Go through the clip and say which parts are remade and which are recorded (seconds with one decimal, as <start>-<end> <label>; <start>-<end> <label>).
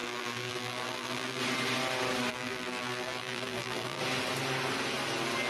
0.0-1.4 remade; 1.4-2.3 recorded; 2.3-4.0 remade; 4.0-5.5 recorded